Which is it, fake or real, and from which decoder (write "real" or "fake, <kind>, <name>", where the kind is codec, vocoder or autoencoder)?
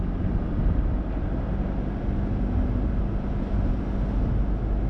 real